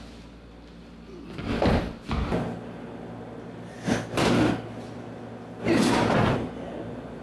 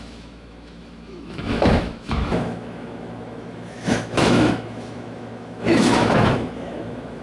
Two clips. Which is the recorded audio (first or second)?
first